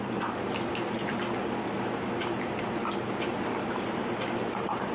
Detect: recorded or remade remade